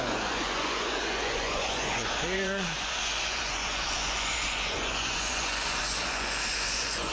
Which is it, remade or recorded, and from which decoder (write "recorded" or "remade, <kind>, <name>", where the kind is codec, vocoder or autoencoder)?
remade, vocoder, Vocos